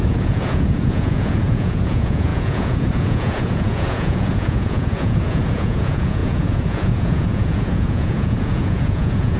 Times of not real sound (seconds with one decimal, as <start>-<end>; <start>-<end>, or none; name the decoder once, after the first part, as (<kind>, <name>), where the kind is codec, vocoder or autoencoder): 0.0-9.4 (vocoder, Vocos)